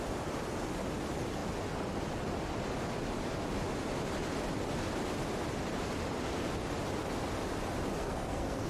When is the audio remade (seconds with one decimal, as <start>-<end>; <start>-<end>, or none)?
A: 7.9-8.7